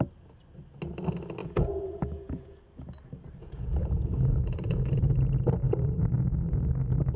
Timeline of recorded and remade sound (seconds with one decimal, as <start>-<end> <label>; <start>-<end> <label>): 0.0-1.4 recorded; 1.4-2.6 remade; 2.6-3.4 recorded; 3.4-5.0 remade; 5.0-7.2 recorded